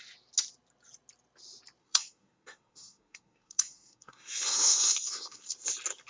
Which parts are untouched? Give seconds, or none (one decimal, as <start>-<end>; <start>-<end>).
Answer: 0.0-1.8; 5.5-6.1